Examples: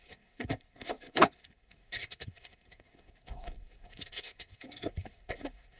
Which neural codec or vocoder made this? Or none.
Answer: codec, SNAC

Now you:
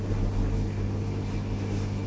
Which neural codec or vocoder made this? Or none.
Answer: none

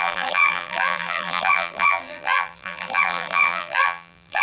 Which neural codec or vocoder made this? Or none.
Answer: vocoder, BigVGAN v2